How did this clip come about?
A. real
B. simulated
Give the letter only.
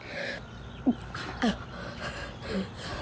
A